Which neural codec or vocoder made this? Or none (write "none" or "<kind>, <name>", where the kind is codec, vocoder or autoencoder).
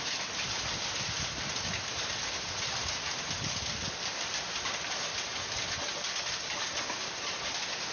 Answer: none